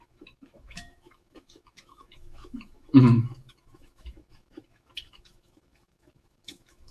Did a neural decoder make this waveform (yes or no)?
yes